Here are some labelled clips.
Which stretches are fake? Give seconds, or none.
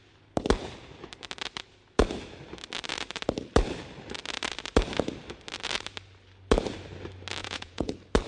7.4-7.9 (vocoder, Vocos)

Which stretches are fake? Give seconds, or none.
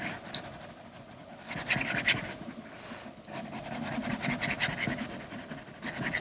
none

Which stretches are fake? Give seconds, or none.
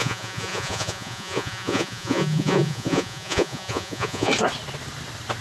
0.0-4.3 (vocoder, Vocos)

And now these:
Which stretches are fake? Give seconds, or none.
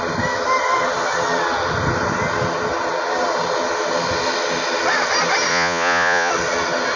5.5-6.3 (vocoder, Vocos)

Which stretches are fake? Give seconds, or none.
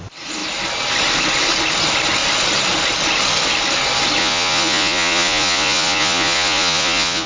4.2-7.3 (vocoder, Vocos)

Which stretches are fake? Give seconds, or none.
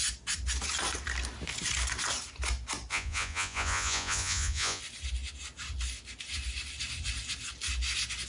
2.9-4.8 (vocoder, Vocos)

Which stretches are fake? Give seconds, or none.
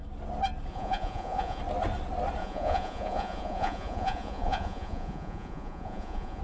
0.7-1.6 (vocoder, Vocos); 2.4-6.4